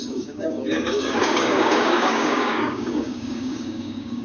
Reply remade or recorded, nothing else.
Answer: remade